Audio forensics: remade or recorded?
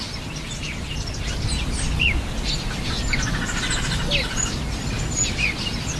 recorded